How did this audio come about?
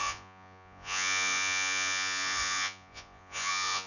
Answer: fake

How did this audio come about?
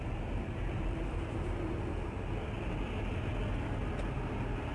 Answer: real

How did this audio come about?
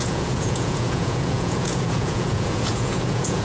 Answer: fake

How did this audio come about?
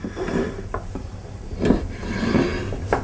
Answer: real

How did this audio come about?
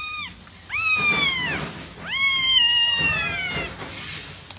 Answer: real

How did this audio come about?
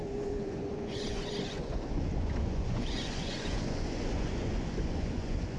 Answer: fake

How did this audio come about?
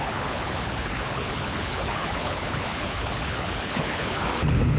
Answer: fake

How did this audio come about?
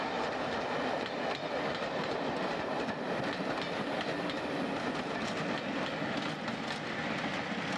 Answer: real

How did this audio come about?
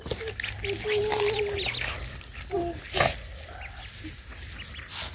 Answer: real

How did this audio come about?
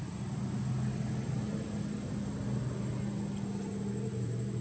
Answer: real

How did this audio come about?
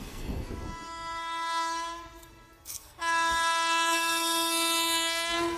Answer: fake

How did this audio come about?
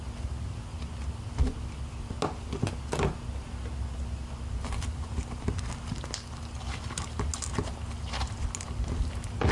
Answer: real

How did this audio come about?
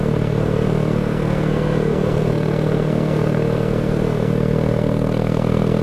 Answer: fake